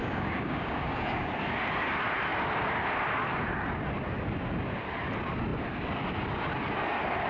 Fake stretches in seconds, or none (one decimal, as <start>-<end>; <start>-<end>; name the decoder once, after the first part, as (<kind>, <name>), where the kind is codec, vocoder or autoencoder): 0.0-1.3 (codec, DAC)